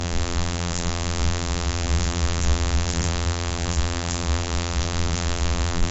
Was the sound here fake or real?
fake